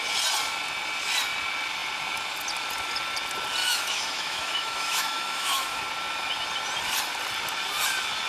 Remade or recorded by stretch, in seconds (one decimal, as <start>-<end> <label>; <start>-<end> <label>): 0.0-3.6 recorded; 3.6-5.8 remade; 5.8-8.3 recorded